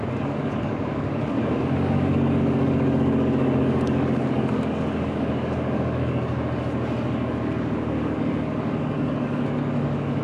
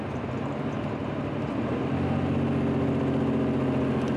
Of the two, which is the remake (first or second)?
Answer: first